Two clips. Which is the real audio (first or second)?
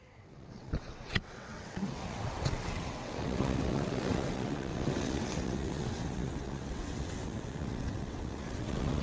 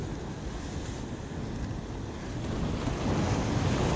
second